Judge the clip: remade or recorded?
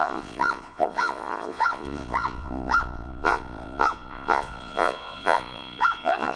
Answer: remade